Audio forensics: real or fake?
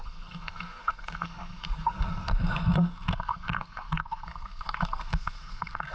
fake